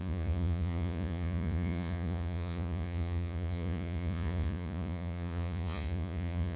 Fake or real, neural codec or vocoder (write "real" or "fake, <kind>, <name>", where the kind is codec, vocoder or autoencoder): fake, vocoder, Vocos